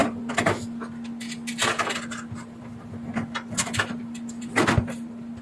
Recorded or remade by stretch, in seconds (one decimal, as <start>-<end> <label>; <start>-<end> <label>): 0.0-5.4 recorded